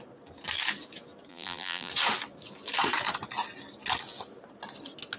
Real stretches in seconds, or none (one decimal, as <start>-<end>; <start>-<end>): 0.0-1.3; 1.9-5.2